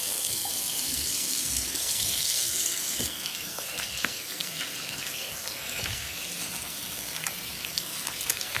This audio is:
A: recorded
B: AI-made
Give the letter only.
B